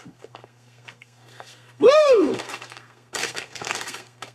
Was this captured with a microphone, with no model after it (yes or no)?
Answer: no